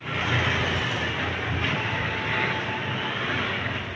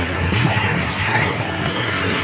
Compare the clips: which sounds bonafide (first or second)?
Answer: first